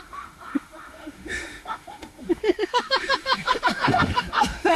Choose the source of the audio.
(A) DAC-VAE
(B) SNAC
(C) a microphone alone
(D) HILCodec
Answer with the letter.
A